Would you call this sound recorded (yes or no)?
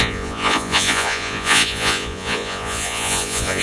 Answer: no